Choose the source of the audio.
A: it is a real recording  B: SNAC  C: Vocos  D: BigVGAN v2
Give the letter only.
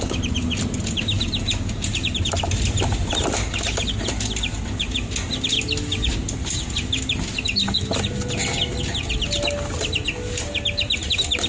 A